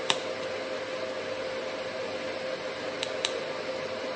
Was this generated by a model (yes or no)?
no